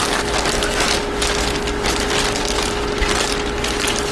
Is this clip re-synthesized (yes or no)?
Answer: no